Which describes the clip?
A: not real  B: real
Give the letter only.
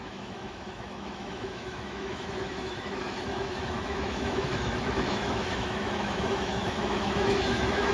A